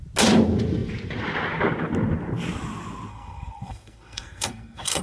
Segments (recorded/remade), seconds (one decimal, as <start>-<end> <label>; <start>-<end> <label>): 0.0-3.1 recorded; 3.1-5.0 remade